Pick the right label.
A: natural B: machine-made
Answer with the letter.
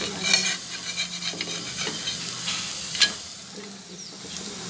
A